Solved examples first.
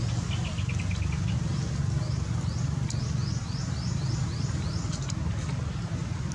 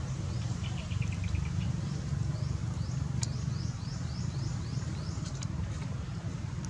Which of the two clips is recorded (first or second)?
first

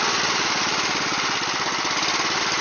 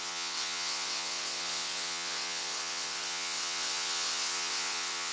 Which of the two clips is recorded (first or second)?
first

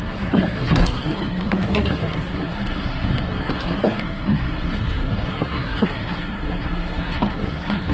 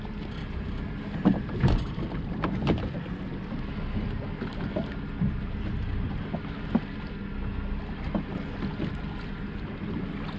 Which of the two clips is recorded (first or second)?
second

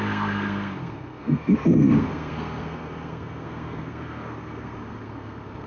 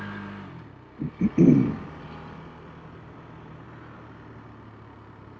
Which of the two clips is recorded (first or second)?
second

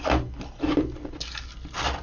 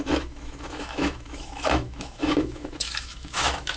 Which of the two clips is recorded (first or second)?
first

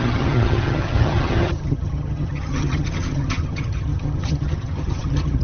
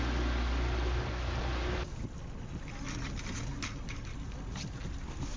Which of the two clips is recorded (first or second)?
second